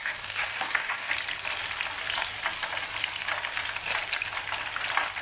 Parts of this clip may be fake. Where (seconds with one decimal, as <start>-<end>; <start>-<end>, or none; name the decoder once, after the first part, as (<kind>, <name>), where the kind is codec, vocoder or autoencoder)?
0.0-1.1 (codec, DAC)